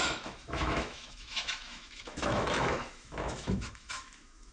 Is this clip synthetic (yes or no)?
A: yes